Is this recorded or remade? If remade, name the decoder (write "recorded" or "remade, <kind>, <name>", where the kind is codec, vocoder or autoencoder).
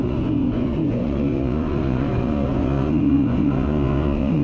remade, vocoder, Vocos